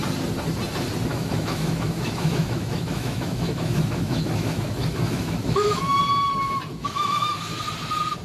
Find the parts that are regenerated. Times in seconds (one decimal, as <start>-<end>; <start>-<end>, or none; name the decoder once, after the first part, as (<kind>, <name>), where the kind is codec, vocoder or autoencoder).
1.1-6.0 (autoencoder, DAC-VAE); 6.7-7.6